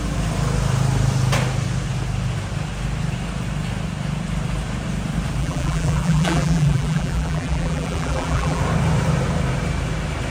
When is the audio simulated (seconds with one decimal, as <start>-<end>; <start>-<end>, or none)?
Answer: 5.4-8.6